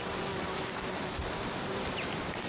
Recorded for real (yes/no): yes